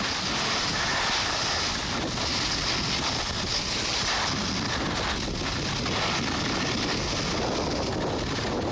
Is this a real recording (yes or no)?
yes